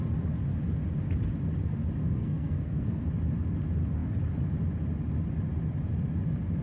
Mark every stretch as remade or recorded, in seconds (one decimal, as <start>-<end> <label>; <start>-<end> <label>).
0.0-2.0 recorded; 2.0-3.0 remade; 3.0-6.6 recorded